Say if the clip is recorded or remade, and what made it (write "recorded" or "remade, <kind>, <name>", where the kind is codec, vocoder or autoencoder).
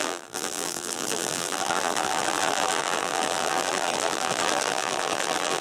remade, vocoder, BigVGAN v2